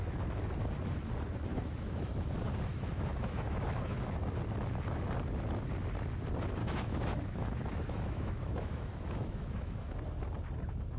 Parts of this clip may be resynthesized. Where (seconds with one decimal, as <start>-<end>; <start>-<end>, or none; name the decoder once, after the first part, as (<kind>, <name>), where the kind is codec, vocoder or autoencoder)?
1.5-2.1 (autoencoder, DAC-VAE); 2.7-4.1; 6.6-9.9